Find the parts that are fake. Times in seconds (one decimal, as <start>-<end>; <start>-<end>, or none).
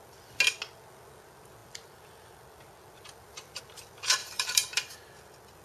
4.2-5.1